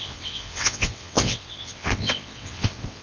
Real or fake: fake